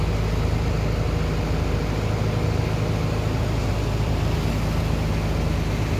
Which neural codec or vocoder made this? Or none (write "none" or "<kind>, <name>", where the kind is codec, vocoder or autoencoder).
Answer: none